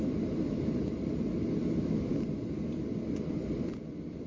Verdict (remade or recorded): remade